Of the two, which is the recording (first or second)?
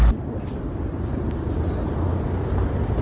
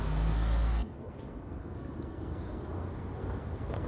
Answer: first